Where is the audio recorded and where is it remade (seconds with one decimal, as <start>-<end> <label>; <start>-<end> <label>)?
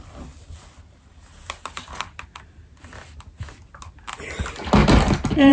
0.0-5.5 recorded